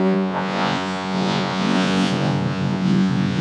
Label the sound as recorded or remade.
remade